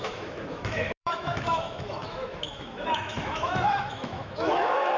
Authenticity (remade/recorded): remade